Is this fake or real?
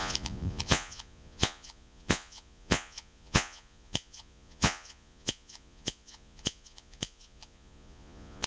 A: fake